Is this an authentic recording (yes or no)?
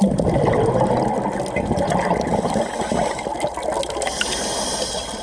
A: yes